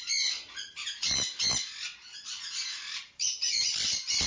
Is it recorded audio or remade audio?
recorded